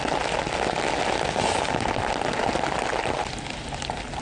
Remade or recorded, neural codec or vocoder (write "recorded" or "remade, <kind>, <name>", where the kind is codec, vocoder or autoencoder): recorded